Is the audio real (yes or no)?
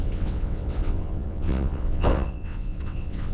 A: no